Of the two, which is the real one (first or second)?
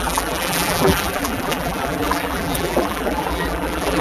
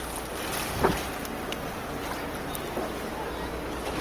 second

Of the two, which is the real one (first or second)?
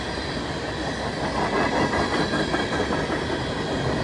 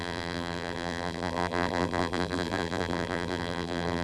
first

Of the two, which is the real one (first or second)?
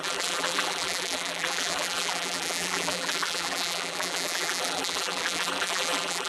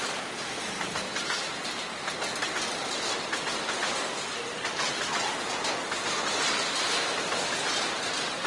second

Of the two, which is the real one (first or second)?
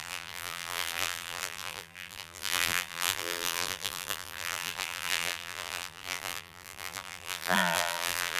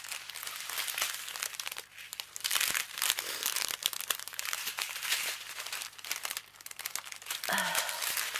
second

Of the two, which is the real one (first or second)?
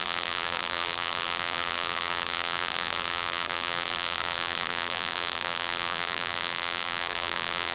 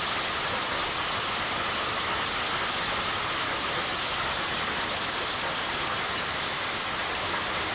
second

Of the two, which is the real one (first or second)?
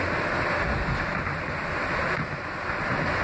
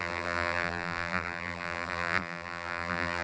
first